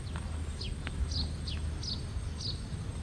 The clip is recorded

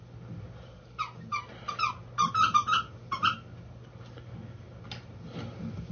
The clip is recorded